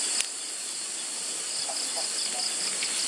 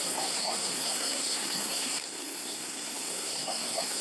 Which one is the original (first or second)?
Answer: first